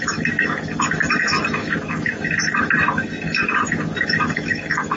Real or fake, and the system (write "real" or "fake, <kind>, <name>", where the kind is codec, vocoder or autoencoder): fake, autoencoder, DAC-VAE